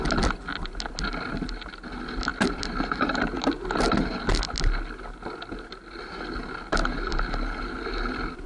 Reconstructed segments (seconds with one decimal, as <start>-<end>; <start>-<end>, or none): none